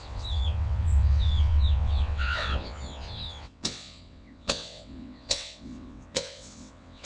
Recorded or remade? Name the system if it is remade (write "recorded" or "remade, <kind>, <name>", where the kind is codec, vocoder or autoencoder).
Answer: remade, vocoder, WaveNeXt